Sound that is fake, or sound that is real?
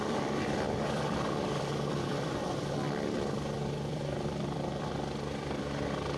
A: fake